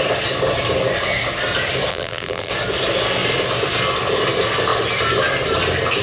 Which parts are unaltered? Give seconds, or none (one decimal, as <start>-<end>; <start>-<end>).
0.0-1.9; 2.5-6.0